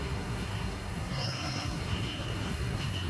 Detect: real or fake fake